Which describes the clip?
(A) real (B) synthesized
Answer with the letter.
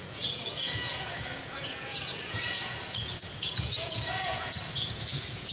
B